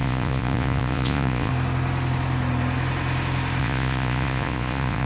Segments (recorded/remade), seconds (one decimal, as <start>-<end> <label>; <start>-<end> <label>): 0.0-1.5 remade; 1.5-3.6 recorded; 3.6-5.1 remade